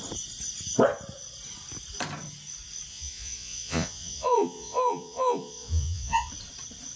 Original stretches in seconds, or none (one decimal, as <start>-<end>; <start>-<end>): 0.0-2.9; 6.3-7.0